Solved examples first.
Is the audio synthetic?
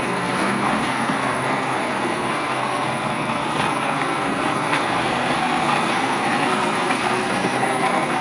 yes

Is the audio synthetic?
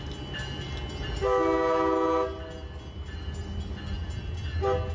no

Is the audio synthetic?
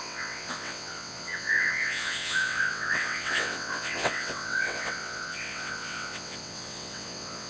yes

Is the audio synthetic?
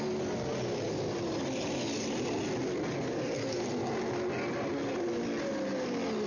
no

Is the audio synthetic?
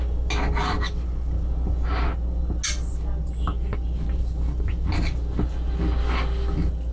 no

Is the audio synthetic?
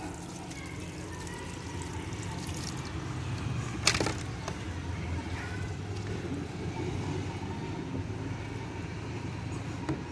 no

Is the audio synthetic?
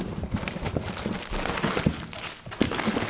no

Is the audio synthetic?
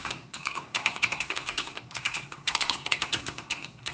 yes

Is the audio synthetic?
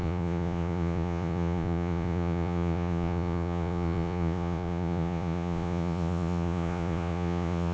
yes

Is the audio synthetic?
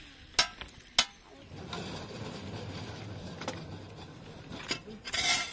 no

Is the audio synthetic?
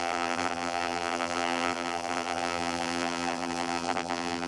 yes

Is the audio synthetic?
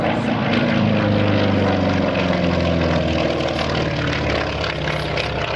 no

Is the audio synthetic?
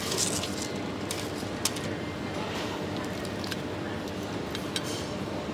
no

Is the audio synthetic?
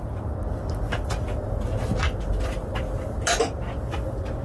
no